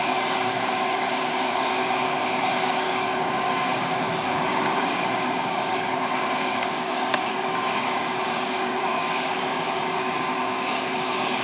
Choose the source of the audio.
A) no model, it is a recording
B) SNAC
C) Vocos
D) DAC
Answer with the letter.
D